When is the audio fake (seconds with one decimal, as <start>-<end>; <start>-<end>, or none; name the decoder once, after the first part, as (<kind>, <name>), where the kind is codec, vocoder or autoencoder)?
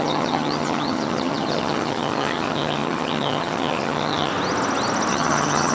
0.0-4.3 (vocoder, HiFi-GAN); 5.1-5.7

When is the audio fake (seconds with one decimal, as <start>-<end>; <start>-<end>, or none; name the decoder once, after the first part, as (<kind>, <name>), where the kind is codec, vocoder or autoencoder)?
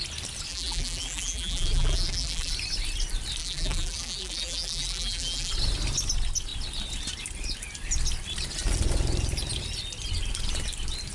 0.5-2.5 (vocoder, BigVGAN v2); 3.4-5.5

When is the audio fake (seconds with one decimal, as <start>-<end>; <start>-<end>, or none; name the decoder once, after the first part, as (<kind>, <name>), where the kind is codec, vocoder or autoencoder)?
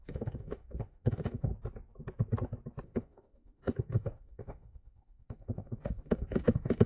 0.0-1.5 (autoencoder, DAC-VAE); 2.8-6.9